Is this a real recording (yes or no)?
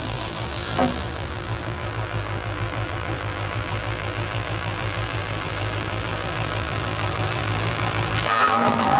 no